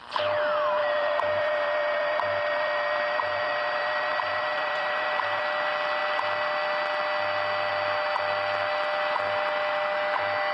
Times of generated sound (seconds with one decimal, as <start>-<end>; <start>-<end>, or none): 0.8-5.4